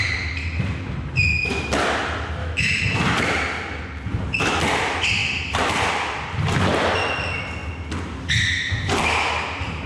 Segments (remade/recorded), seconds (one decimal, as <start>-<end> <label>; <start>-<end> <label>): 0.0-2.4 recorded; 2.4-3.0 remade; 3.0-9.9 recorded